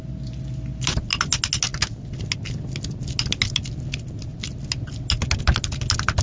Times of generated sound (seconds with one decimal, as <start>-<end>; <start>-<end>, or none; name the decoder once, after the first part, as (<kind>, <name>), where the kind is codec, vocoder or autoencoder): none